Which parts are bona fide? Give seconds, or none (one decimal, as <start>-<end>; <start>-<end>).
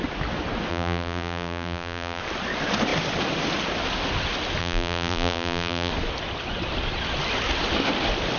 0.0-0.7; 2.2-4.6; 5.9-8.4